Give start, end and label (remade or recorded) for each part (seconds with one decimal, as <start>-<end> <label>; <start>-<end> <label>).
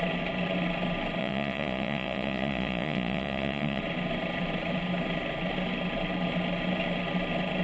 0.0-1.2 recorded; 1.2-3.8 remade; 3.8-7.6 recorded